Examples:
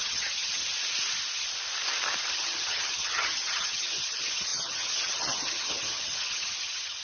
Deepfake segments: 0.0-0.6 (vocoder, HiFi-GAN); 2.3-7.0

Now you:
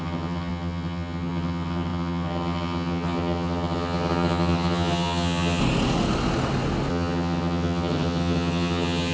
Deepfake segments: 0.0-5.6 (vocoder, HiFi-GAN); 6.9-9.1